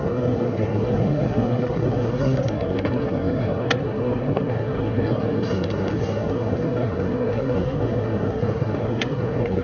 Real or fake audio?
fake